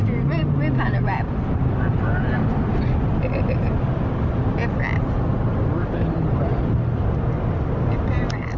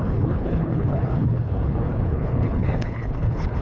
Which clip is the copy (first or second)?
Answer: second